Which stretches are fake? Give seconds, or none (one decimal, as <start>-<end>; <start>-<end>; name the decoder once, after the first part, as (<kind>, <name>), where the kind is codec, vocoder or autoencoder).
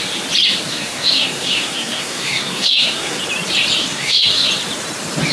0.7-3.2 (codec, SNAC); 3.8-4.5